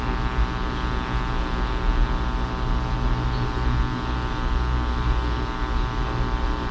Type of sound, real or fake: real